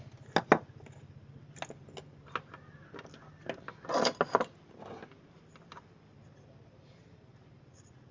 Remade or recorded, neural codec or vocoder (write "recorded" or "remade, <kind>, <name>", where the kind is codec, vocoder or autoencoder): recorded